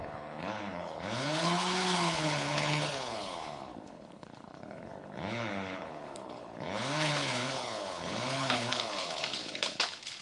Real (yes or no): no